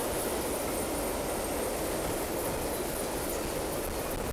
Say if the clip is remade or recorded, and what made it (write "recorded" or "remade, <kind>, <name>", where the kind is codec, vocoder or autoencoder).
recorded